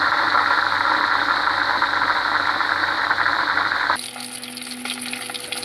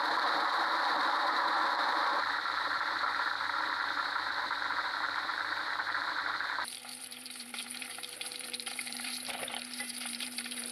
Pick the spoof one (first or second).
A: second